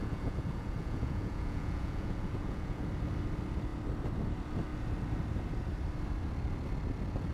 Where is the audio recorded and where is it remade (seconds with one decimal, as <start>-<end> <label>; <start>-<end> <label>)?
0.0-2.9 remade; 2.9-7.3 recorded